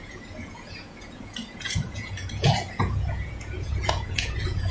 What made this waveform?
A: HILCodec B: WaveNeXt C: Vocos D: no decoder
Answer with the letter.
C